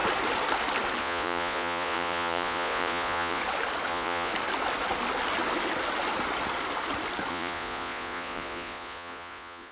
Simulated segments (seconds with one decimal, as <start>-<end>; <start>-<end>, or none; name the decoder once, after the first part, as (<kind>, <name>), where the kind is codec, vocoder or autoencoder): 1.0-3.4 (vocoder, Vocos); 3.9-4.3; 7.3-9.7